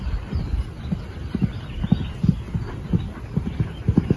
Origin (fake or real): real